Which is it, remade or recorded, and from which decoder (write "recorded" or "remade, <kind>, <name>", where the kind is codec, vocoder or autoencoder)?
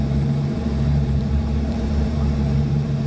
remade, vocoder, BigVGAN v2